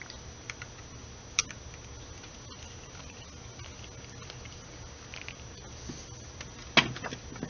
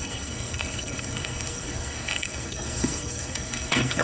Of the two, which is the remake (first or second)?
second